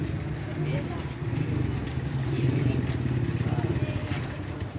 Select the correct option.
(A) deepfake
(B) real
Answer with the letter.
B